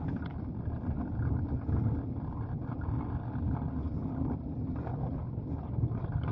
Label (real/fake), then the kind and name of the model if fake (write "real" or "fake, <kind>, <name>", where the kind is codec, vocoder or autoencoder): real